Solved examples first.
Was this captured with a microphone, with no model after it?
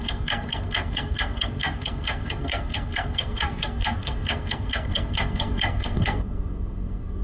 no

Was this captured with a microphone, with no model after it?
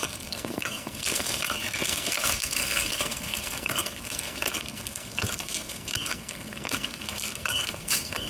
no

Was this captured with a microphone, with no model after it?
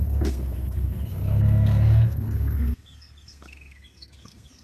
no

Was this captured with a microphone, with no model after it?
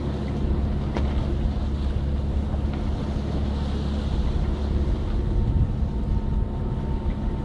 yes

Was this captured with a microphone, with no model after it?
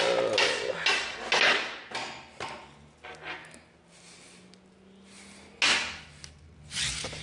yes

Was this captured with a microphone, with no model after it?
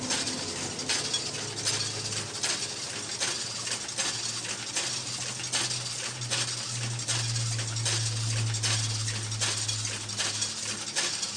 yes